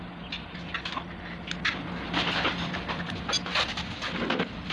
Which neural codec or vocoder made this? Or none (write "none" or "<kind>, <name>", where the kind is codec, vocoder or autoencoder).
none